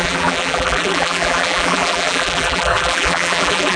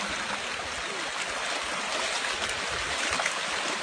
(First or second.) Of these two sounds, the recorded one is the second